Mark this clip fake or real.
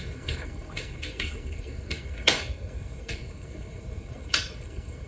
fake